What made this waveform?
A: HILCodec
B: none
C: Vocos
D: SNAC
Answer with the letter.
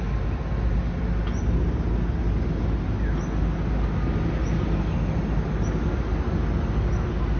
B